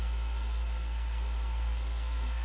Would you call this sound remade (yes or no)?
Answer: yes